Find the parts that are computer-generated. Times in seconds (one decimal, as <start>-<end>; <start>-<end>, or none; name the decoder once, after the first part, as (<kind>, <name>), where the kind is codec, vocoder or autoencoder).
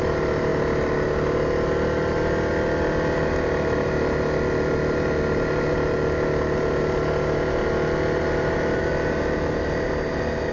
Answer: none